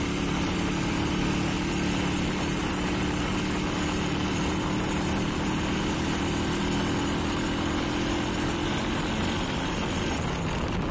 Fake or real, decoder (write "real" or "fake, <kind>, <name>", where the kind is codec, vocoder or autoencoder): real